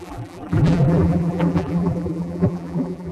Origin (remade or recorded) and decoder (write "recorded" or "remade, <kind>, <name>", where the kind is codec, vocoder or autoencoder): remade, vocoder, BigVGAN v2